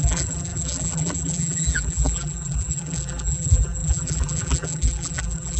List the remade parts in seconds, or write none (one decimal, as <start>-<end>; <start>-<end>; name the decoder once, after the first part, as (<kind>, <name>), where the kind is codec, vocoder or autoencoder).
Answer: 0.0-5.6 (vocoder, BigVGAN v2)